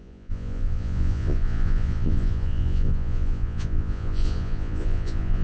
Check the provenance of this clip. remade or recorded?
remade